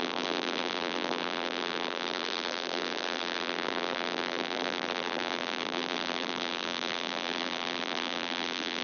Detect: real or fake fake